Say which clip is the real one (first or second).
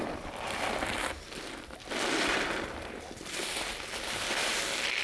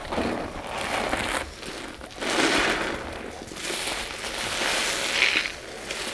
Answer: second